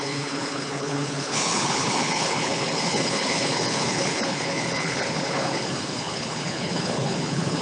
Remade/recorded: remade